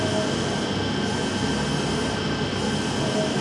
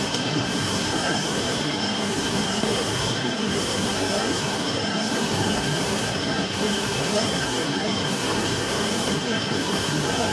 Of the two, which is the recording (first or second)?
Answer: first